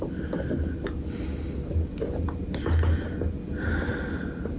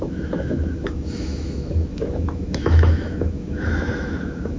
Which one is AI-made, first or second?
second